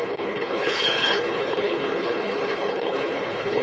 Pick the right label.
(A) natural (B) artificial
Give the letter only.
B